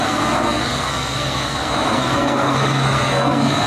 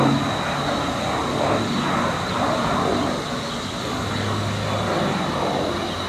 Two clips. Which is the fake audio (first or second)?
first